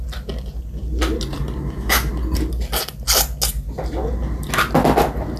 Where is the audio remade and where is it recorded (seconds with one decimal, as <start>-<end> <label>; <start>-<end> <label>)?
0.0-1.6 recorded; 1.6-2.1 remade; 2.1-5.4 recorded